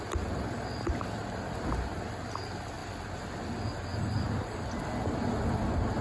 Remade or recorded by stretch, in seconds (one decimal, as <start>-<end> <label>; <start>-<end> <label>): 0.0-6.0 recorded